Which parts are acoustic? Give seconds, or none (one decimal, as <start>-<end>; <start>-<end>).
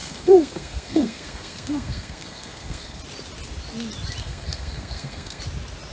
3.0-4.2; 5.4-5.9